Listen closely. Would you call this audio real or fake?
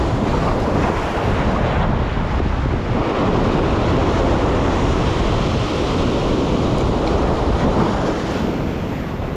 real